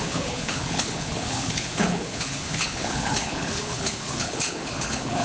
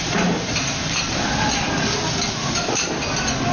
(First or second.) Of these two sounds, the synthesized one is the first